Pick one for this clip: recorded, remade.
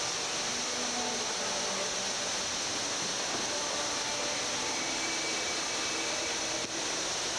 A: recorded